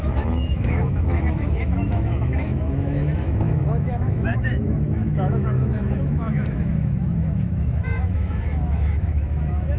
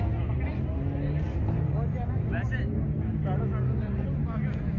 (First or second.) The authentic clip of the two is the second